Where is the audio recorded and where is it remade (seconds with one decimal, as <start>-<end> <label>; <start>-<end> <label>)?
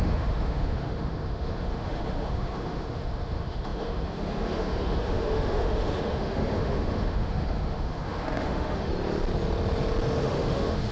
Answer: 0.0-8.9 remade; 8.9-10.2 recorded; 10.2-10.9 remade